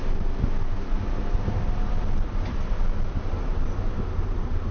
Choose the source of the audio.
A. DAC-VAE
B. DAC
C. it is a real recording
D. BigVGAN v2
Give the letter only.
C